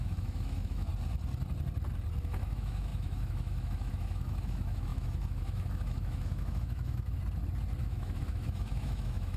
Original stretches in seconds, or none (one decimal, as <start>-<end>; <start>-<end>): 0.9-2.2; 7.2-7.8